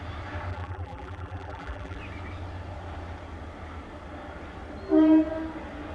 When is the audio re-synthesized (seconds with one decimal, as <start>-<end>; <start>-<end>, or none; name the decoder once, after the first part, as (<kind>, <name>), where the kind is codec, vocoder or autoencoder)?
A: 0.5-2.0 (vocoder, BigVGAN v2)